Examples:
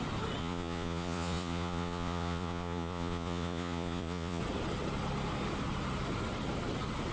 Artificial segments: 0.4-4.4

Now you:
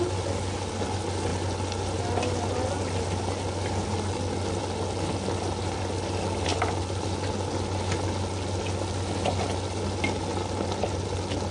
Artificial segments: none

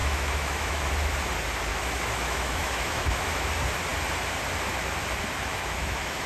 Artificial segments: 0.0-0.9; 1.7-3.5; 5.5-6.3

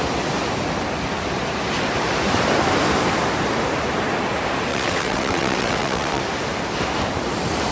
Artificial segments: 4.7-6.2

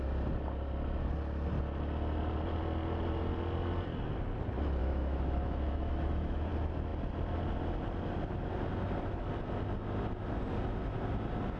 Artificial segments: 4.8-6.5

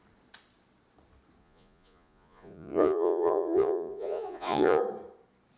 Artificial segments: 1.4-4.8